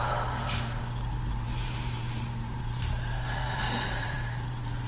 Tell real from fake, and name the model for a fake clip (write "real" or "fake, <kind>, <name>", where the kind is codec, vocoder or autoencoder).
fake, vocoder, BigVGAN v2